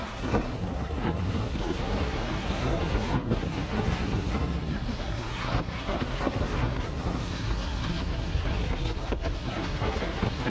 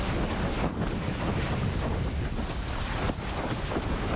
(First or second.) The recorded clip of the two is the second